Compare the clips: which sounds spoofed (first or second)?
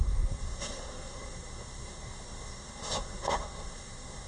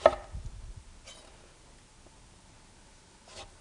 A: first